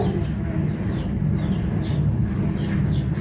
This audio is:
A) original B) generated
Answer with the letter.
A